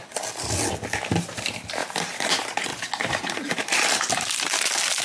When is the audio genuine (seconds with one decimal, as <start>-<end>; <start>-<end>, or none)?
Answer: 0.0-1.8; 2.3-2.7